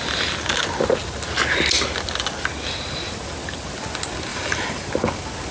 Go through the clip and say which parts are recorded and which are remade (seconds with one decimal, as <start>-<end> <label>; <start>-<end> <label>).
0.0-4.3 recorded; 4.3-4.9 remade; 4.9-5.5 recorded